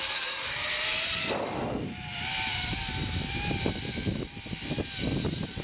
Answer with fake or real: real